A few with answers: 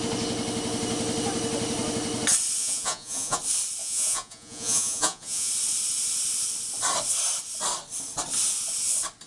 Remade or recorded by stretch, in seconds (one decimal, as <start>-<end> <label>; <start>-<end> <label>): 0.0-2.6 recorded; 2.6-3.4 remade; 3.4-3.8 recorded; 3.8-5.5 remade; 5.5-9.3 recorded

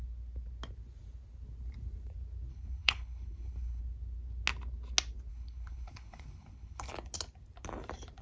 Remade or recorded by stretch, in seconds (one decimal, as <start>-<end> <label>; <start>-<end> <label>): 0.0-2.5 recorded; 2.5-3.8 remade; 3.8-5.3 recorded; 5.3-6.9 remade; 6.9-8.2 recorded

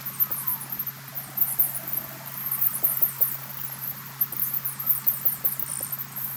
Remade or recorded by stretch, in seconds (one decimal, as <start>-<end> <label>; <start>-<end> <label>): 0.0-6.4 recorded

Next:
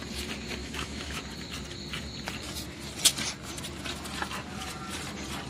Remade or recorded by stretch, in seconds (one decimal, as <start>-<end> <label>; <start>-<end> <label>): 0.0-0.6 recorded; 0.6-1.2 remade; 1.2-5.5 recorded

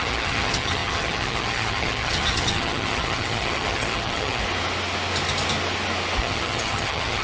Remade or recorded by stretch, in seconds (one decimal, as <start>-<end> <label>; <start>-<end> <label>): 0.0-4.4 remade; 4.4-6.2 recorded; 6.2-7.2 remade

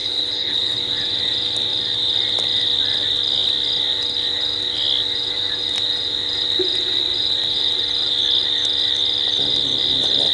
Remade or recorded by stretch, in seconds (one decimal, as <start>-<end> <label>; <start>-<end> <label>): 0.0-0.8 remade; 0.8-10.3 recorded